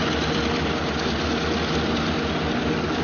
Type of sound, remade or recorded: recorded